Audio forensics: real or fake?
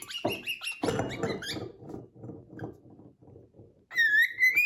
real